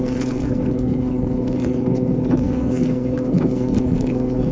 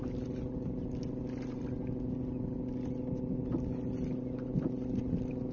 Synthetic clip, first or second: first